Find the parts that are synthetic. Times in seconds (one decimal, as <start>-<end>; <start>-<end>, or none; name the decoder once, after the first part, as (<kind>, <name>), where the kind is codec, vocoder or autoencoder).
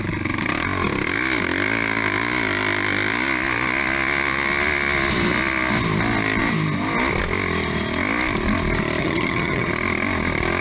9.0-9.7 (vocoder, HiFi-GAN)